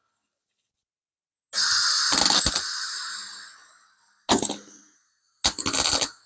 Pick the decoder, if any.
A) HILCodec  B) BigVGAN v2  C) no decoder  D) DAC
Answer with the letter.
C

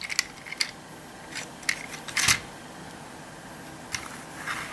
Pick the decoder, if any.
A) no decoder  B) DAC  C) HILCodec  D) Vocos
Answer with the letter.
A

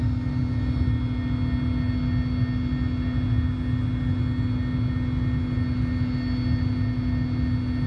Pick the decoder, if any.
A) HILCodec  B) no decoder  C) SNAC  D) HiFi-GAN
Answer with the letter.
B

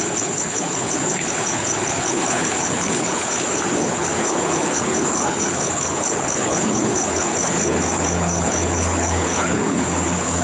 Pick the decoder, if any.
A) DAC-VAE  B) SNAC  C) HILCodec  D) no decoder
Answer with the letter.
C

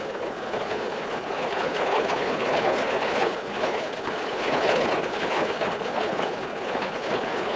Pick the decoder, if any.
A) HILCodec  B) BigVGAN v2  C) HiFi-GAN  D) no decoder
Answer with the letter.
A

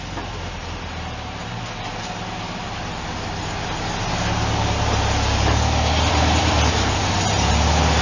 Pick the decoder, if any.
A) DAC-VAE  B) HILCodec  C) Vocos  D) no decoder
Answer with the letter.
D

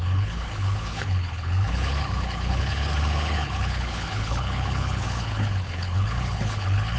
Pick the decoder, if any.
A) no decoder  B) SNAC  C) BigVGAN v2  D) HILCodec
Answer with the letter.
D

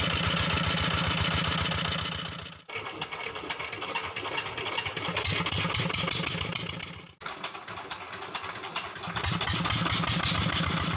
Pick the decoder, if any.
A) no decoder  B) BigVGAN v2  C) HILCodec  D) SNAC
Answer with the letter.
A